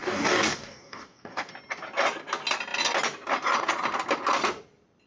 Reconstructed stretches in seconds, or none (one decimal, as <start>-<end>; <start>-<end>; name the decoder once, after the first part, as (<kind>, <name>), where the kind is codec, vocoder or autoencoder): 0.0-1.5 (codec, DAC)